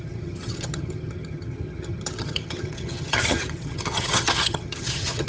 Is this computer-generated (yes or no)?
yes